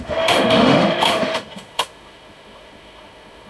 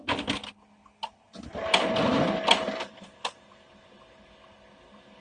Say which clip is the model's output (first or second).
first